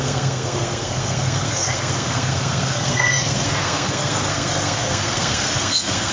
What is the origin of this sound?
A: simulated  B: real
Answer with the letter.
A